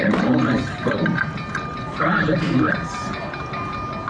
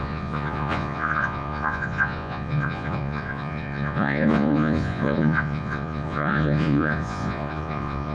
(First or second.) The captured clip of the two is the first